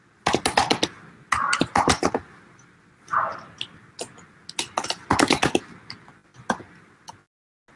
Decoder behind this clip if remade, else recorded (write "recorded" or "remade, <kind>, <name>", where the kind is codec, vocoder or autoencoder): recorded